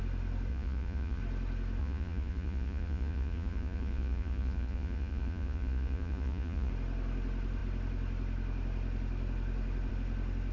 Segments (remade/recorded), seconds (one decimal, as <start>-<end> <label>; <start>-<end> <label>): 0.0-0.5 recorded; 0.5-1.2 remade; 1.2-1.8 recorded; 1.8-6.7 remade; 6.7-10.5 recorded